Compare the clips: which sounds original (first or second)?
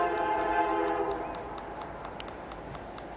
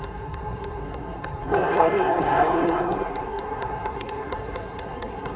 first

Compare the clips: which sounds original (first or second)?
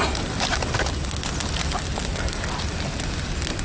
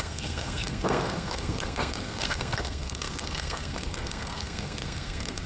first